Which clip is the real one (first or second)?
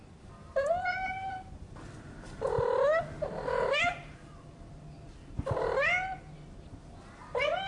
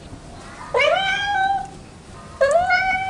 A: second